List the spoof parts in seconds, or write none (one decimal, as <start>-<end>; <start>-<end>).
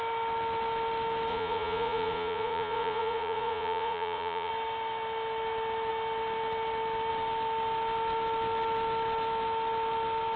1.3-4.5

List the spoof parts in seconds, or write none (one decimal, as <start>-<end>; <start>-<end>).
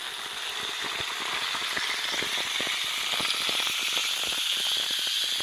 none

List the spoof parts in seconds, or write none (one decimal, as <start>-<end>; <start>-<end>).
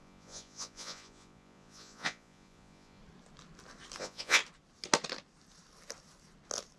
0.0-3.0; 4.0-4.4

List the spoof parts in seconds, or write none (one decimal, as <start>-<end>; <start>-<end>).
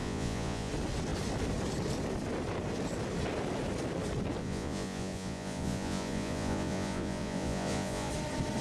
0.0-0.7; 4.4-8.1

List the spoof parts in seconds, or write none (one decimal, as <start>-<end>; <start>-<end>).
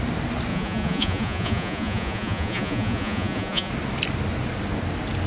0.5-3.7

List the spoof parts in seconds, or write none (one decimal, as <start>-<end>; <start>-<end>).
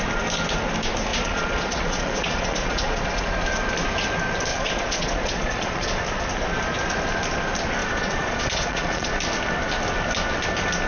1.1-3.2; 4.5-6.0; 7.8-9.1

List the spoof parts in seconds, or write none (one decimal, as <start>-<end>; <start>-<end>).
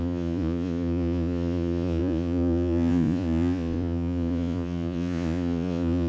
0.0-6.1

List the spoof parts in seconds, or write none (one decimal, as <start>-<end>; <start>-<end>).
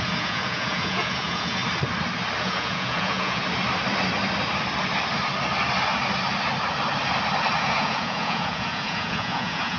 0.0-1.6; 2.4-3.4; 7.6-9.8